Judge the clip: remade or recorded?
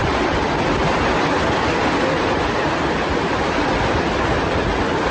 recorded